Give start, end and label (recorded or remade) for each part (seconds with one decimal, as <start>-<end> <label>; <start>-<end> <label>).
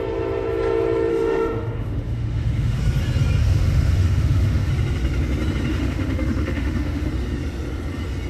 0.0-1.1 recorded; 1.1-2.8 remade; 2.8-3.4 recorded; 3.4-4.7 remade; 4.7-5.7 recorded; 5.7-7.1 remade; 7.1-8.3 recorded